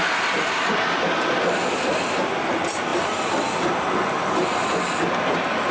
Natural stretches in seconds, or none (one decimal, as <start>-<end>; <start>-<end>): 0.0-5.7